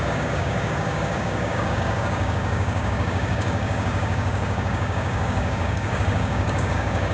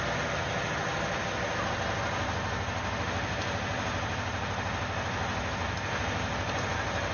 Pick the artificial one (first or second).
first